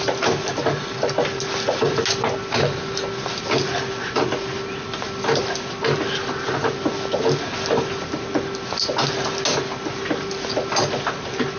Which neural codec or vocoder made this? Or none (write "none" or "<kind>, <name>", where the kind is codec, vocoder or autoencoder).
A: none